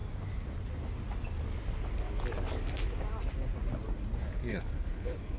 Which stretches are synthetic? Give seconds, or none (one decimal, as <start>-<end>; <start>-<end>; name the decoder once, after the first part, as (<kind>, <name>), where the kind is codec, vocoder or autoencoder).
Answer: 4.5-5.4 (codec, HILCodec)